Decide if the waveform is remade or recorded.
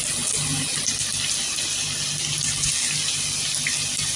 recorded